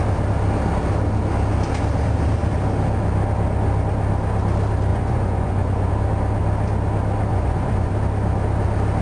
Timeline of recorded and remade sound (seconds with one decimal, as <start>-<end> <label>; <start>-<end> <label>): 0.0-4.9 recorded; 4.9-5.9 remade; 5.9-7.3 recorded; 7.3-7.9 remade; 7.9-9.0 recorded